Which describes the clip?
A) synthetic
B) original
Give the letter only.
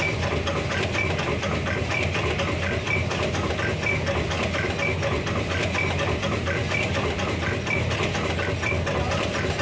B